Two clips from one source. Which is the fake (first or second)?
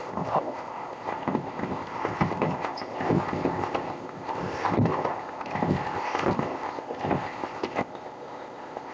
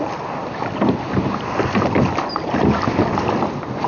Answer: first